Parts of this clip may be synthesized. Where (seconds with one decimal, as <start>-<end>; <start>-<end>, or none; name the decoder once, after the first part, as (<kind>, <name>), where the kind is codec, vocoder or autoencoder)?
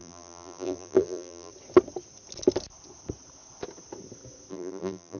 0.0-1.5 (vocoder, BigVGAN v2); 4.5-5.2